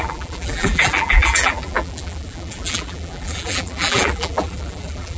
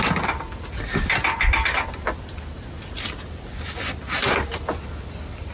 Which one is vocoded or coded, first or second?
first